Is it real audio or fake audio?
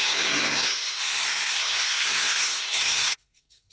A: fake